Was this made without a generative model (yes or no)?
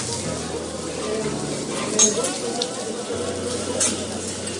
yes